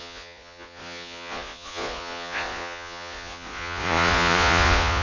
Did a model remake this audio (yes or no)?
yes